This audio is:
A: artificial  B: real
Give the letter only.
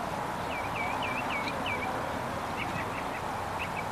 B